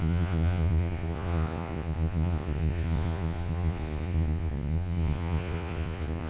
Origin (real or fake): fake